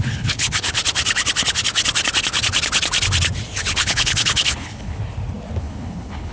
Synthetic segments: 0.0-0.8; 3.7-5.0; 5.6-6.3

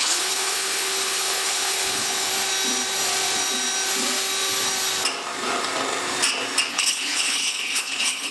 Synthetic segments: 0.0-2.3; 6.7-8.3

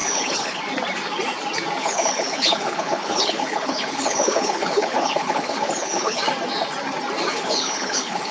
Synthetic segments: 0.0-0.6; 1.8-6.2; 7.3-8.3

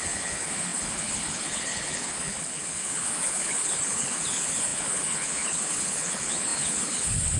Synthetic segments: 0.0-7.4

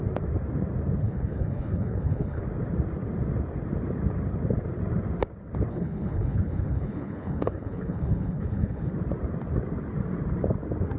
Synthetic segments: 1.0-2.4; 5.7-8.9

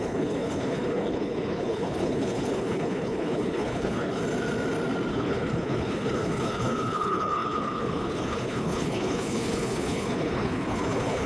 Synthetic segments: 0.0-4.2; 5.1-11.3